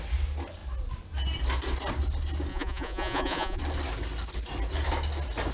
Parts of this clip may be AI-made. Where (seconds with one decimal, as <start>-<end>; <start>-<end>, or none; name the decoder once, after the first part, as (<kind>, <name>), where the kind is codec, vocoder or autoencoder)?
2.5-3.6 (vocoder, Vocos)